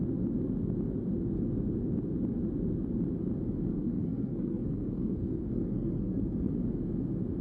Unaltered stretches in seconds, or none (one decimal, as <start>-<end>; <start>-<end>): 0.0-3.7; 6.5-7.4